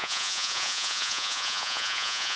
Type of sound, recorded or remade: remade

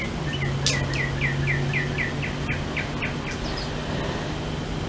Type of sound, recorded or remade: recorded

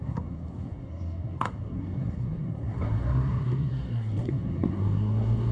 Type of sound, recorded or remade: remade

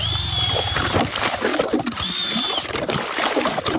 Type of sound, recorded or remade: remade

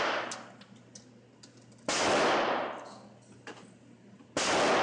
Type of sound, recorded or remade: recorded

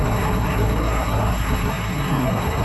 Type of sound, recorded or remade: remade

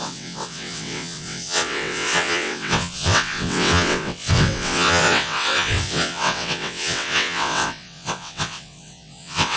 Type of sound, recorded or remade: remade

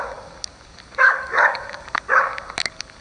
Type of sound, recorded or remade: remade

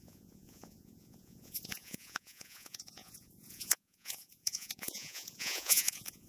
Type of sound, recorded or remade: remade